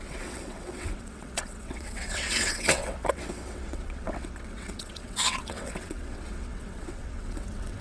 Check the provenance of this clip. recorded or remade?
remade